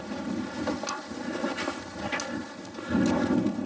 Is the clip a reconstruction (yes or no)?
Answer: no